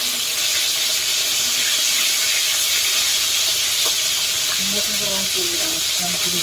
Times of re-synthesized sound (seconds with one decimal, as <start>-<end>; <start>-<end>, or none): 1.0-4.8